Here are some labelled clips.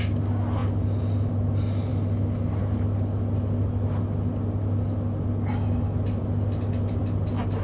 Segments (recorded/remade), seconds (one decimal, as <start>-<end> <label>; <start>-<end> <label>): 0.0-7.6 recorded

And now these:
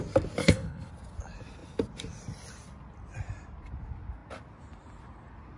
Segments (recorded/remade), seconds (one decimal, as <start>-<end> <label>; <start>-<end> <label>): 0.0-0.4 recorded; 0.4-0.9 remade; 0.9-5.6 recorded

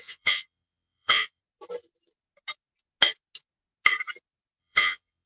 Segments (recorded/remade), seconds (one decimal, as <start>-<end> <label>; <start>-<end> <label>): 0.0-1.4 remade; 1.4-4.6 recorded; 4.6-5.3 remade